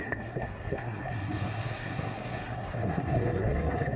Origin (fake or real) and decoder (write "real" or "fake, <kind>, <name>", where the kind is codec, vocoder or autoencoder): fake, codec, SNAC